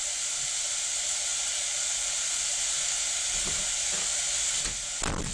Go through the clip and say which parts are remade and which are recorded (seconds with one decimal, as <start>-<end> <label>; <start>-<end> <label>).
0.0-5.3 recorded